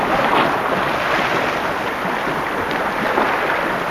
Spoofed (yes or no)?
no